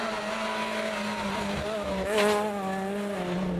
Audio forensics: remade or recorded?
recorded